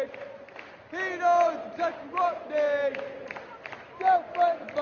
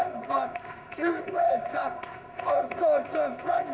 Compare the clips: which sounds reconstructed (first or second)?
second